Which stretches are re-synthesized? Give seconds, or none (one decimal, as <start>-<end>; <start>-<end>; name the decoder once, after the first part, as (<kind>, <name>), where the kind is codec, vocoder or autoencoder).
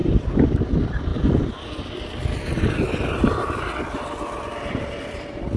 none